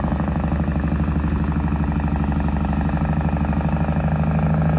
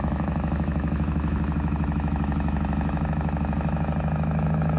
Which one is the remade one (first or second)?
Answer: second